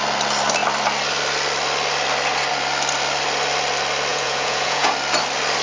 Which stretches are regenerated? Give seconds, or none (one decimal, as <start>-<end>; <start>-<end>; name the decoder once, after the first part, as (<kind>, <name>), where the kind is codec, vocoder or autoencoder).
4.1-4.9 (vocoder, Vocos)